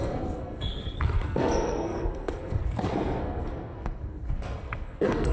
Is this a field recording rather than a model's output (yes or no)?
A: no